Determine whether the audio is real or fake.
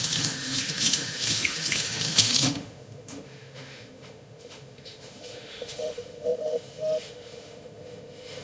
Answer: fake